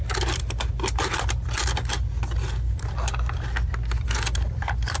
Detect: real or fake real